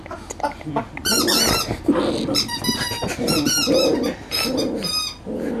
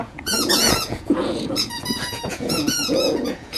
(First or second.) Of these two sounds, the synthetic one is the second